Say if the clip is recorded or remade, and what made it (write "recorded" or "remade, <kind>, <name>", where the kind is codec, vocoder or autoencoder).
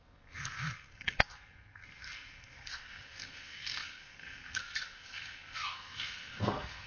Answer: remade, codec, SNAC